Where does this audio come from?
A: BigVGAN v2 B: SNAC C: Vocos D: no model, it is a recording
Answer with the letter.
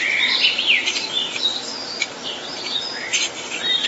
A